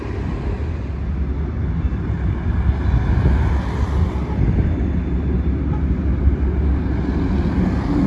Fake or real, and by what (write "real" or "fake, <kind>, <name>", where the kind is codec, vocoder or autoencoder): real